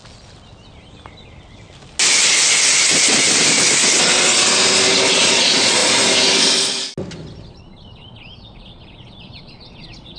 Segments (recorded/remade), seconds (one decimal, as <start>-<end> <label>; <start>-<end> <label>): 0.0-5.1 recorded; 5.1-5.8 remade; 5.8-7.5 recorded; 7.5-10.2 remade